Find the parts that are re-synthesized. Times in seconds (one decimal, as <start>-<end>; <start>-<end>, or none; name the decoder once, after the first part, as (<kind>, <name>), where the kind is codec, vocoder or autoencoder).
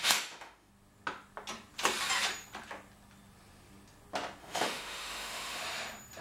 0.0-0.7 (autoencoder, DAC-VAE); 4.4-5.6